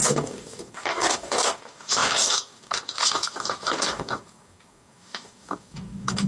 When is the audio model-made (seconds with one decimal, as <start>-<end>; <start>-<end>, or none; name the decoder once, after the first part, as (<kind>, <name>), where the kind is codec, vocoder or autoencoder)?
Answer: 0.0-6.3 (codec, DAC)